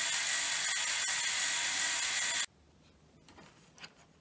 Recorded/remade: recorded